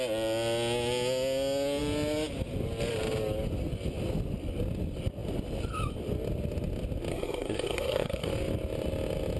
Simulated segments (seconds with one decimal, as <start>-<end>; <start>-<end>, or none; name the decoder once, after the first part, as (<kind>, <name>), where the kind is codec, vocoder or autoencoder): 7.1-8.3 (codec, SNAC)